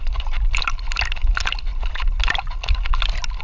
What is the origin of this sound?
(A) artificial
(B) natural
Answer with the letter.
B